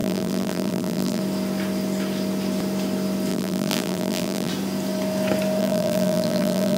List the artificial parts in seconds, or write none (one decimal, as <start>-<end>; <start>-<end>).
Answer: 0.0-1.2; 3.3-4.5; 5.6-6.8